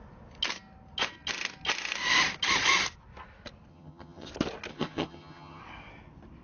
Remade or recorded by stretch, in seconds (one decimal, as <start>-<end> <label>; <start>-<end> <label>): 0.0-3.7 recorded; 3.7-4.3 remade; 4.3-4.7 recorded; 4.7-5.6 remade; 5.6-6.4 recorded